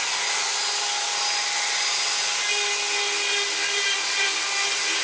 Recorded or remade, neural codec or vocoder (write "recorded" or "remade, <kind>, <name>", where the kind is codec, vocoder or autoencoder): recorded